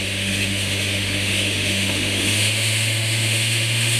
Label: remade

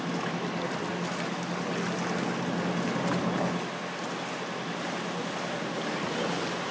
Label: recorded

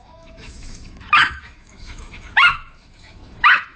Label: remade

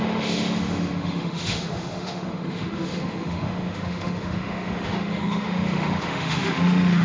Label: remade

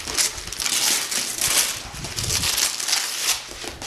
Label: recorded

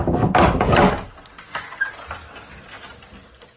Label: recorded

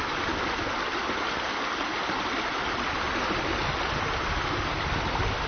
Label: recorded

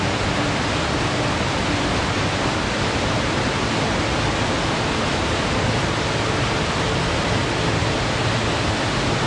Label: recorded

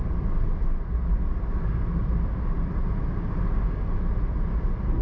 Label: recorded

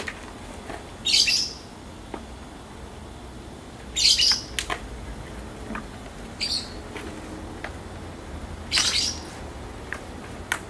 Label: recorded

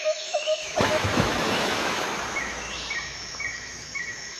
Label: remade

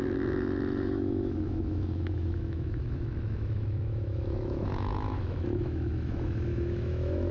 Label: remade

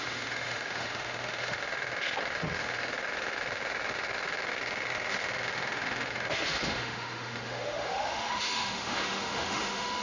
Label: remade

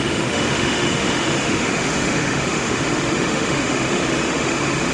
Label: remade